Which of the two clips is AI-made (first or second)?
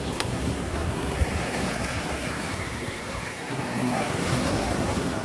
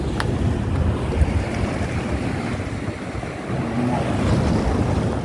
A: first